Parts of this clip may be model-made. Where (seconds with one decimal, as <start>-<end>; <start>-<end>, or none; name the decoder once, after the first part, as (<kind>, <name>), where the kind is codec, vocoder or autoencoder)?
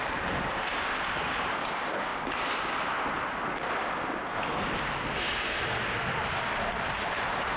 0.0-2.1 (vocoder, BigVGAN v2); 6.7-7.6